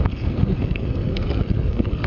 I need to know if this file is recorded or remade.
remade